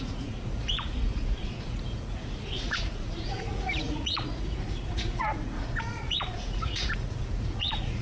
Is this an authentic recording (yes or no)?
no